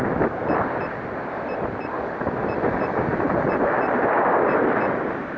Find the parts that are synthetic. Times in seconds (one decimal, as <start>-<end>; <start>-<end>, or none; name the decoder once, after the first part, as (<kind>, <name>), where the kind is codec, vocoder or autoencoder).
3.1-4.3 (vocoder, BigVGAN v2)